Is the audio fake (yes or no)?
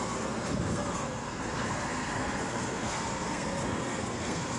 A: yes